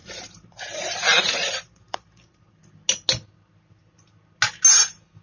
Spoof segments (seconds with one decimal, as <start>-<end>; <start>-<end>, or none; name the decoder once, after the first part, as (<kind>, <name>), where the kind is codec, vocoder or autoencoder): 0.0-2.6 (vocoder, BigVGAN v2)